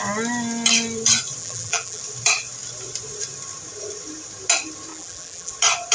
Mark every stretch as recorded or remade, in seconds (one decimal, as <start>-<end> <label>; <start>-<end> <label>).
0.0-1.4 recorded; 1.4-2.0 remade; 2.0-4.9 recorded; 4.9-5.5 remade; 5.5-5.9 recorded